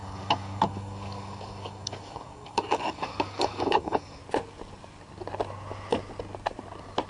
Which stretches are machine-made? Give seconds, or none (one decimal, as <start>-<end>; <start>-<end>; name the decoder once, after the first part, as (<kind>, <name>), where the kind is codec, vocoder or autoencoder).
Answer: 0.0-4.2 (codec, DAC)

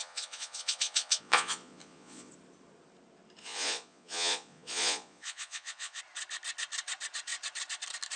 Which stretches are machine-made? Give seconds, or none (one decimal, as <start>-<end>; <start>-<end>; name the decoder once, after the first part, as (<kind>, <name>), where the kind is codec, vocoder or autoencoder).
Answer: 0.0-2.3 (vocoder, Vocos); 3.4-6.0

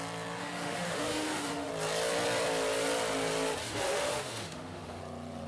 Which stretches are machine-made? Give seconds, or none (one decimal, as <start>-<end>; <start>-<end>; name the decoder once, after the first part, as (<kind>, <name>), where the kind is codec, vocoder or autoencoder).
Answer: 0.4-1.7 (autoencoder, DAC-VAE); 3.6-5.0

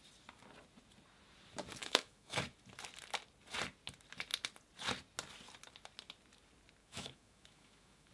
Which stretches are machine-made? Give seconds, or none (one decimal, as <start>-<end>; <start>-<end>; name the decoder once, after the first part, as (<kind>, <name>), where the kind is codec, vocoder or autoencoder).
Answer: 1.8-2.4 (autoencoder, DAC-VAE); 6.8-8.1

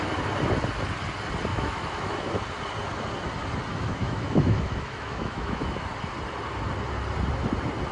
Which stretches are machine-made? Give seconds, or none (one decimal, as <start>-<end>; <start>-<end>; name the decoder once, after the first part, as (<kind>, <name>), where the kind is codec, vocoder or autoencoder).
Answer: 1.5-2.3 (autoencoder, DAC-VAE); 3.7-5.9

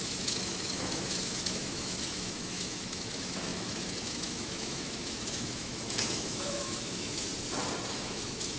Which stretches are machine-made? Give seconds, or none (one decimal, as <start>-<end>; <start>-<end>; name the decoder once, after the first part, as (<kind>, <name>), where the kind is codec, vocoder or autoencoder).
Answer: 0.0-7.3 (autoencoder, DAC-VAE); 7.9-8.6

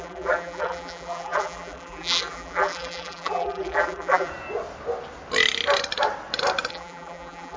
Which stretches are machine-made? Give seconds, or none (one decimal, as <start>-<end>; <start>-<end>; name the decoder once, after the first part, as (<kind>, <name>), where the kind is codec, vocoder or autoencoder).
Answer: 0.0-4.3 (vocoder, BigVGAN v2); 6.7-7.6

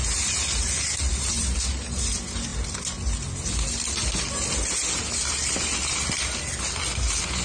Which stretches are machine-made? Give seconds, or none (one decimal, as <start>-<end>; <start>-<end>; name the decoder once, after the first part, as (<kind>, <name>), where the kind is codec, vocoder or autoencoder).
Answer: none